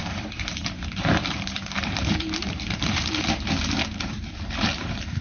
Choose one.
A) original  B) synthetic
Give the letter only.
B